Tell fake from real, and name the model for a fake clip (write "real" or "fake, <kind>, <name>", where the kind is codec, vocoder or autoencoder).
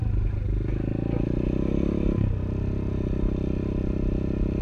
real